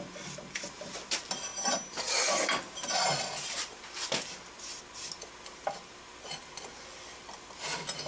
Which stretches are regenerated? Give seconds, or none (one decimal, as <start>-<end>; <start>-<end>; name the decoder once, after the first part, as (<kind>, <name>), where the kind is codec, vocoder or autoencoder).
none